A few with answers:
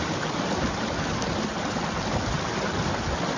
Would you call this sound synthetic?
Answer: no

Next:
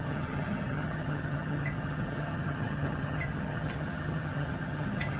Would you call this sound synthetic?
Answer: yes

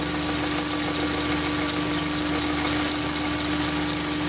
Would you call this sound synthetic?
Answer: no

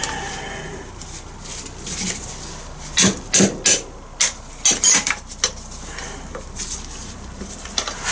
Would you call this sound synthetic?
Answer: no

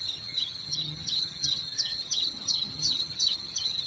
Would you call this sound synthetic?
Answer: yes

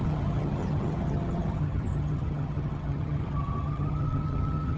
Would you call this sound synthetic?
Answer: yes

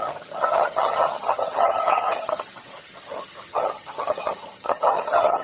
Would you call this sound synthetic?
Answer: yes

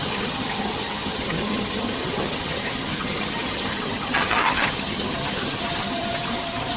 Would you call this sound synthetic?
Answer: yes